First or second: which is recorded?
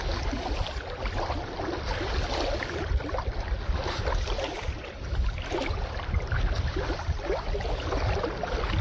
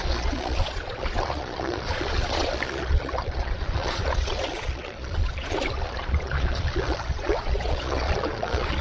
first